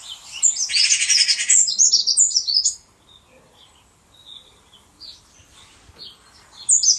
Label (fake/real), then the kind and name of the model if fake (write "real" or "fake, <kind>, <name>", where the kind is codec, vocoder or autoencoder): real